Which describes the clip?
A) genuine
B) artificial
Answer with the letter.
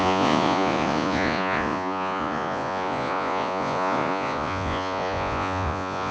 B